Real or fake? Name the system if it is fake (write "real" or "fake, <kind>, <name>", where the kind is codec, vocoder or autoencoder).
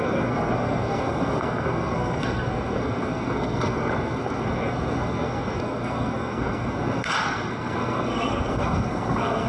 fake, codec, SNAC